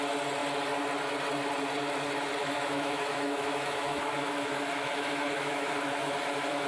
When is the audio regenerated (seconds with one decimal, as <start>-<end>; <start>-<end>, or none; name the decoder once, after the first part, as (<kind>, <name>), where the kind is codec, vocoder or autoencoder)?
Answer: 2.4-6.7 (autoencoder, DAC-VAE)